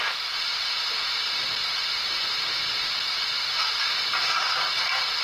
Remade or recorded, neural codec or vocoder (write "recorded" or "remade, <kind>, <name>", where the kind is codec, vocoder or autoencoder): recorded